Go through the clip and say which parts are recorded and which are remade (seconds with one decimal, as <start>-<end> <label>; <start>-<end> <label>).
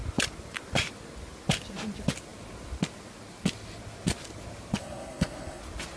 0.0-4.8 recorded; 4.8-5.6 remade; 5.6-6.0 recorded